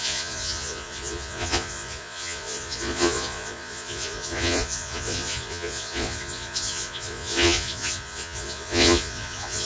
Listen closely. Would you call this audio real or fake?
fake